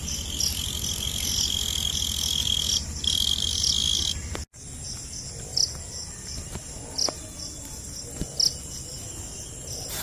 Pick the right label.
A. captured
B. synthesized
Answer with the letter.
A